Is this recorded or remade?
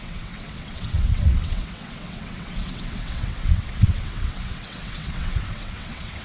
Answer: remade